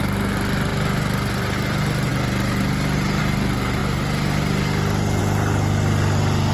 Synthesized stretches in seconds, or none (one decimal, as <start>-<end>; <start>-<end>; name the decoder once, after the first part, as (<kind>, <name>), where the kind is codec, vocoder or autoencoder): none